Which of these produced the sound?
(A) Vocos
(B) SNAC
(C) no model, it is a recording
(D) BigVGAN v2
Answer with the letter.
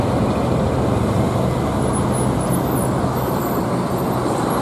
C